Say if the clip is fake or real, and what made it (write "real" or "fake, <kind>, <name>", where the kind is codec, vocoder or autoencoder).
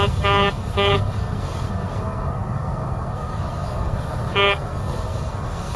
fake, codec, SNAC